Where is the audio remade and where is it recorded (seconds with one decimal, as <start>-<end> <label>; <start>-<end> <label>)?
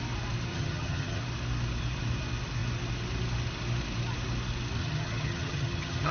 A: 0.0-0.5 recorded; 0.5-1.2 remade; 1.2-4.8 recorded; 4.8-6.1 remade